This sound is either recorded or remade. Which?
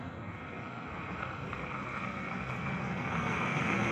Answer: remade